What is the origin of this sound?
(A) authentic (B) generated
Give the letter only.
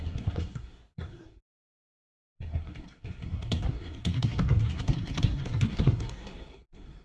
B